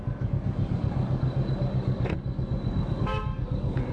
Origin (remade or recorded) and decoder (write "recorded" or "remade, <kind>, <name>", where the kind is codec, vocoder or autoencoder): remade, codec, DAC